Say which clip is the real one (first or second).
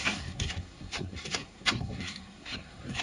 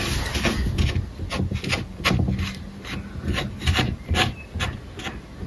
second